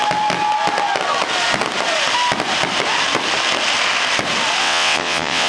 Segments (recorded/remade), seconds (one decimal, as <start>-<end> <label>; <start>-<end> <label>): 0.0-4.6 recorded; 4.6-5.5 remade